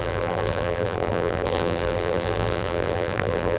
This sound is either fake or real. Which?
fake